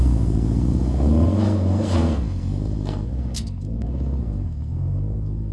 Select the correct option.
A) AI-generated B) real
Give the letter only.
A